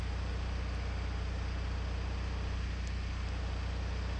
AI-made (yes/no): no